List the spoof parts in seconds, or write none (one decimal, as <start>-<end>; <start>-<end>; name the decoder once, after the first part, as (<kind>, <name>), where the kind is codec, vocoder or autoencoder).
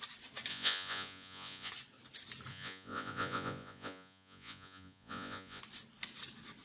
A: 0.5-1.7 (vocoder, Vocos); 2.5-5.6